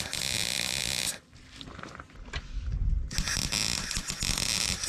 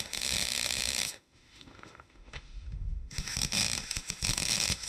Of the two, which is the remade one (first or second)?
second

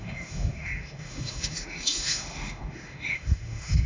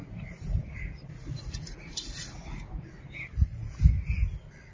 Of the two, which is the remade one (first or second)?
first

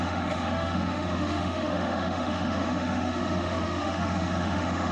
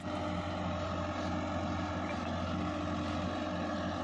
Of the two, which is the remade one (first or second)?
first